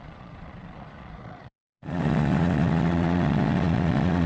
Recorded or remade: remade